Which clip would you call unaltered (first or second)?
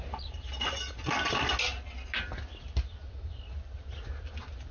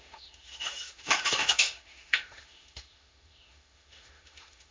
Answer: first